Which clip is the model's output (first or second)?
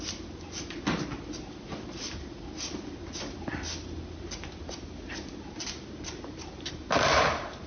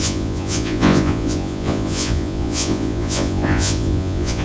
second